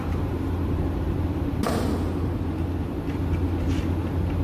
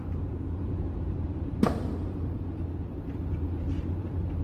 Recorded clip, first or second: first